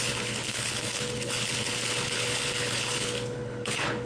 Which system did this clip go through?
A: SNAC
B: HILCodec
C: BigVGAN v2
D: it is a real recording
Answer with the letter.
B